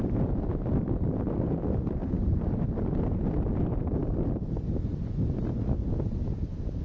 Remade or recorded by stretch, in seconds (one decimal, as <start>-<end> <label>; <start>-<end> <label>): 0.0-2.0 recorded; 2.0-2.6 remade; 2.6-6.8 recorded